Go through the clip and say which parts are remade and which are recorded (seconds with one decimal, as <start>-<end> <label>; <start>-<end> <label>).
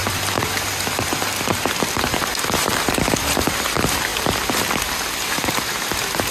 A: 0.0-3.6 remade; 3.6-6.3 recorded